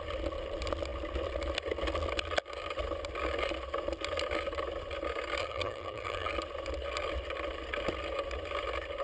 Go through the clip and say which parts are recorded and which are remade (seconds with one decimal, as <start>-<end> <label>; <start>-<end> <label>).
0.0-5.4 recorded; 5.4-6.3 remade; 6.3-9.0 recorded